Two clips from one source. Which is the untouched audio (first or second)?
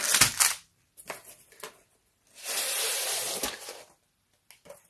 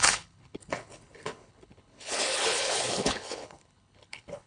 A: first